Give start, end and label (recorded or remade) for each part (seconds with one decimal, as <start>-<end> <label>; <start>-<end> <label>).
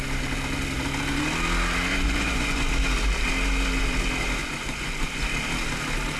0.0-1.9 recorded; 1.9-2.7 remade; 2.7-4.4 recorded; 4.4-5.2 remade; 5.2-6.2 recorded